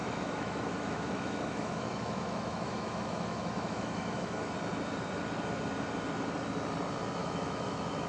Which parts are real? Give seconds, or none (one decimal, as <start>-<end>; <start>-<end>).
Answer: 4.5-7.2